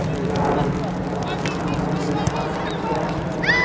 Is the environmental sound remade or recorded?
recorded